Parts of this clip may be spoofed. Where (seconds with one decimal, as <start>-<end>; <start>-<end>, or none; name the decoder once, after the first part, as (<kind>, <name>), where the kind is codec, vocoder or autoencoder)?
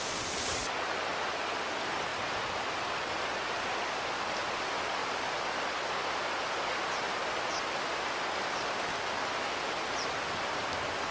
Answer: 0.0-11.1 (vocoder, BigVGAN v2)